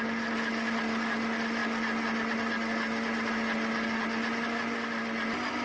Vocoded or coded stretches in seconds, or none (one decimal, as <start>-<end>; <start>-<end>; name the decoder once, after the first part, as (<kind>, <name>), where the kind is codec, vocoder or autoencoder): none